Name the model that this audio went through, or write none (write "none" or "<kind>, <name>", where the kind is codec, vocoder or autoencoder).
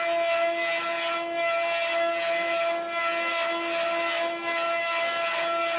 none